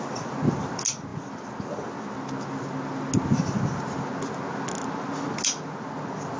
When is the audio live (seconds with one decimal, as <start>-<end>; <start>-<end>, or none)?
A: 0.0-6.4